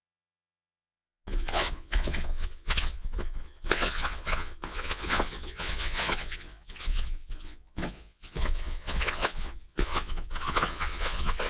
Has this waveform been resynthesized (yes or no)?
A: yes